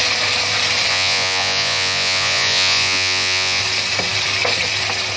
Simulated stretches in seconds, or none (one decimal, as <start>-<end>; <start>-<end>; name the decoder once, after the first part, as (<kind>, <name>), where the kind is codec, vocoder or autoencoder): 0.9-3.6 (vocoder, Vocos)